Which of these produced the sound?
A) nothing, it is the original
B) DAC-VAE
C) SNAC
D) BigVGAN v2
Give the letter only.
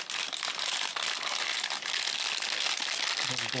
A